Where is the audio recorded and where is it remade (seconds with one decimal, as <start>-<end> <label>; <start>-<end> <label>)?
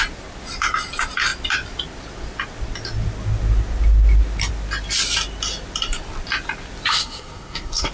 0.0-6.9 recorded; 6.9-7.9 remade